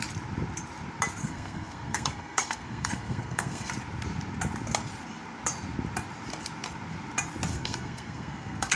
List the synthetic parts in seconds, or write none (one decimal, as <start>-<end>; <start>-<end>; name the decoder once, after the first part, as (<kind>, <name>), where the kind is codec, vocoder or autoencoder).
1.2-3.7 (codec, SNAC); 7.5-8.8